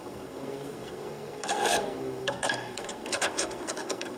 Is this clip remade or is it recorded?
remade